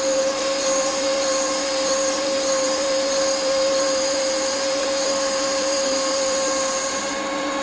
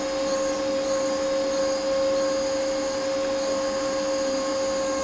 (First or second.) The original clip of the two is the second